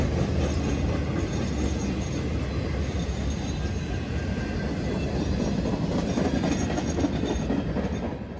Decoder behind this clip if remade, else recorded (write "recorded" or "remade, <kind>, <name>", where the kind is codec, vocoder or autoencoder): recorded